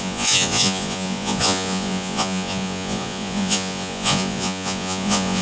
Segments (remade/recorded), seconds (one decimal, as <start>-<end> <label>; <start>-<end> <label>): 0.0-5.4 remade